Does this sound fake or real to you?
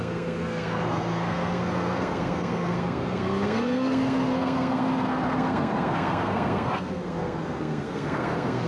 fake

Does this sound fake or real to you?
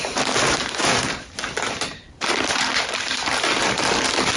fake